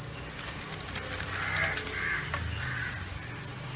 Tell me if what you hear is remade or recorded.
recorded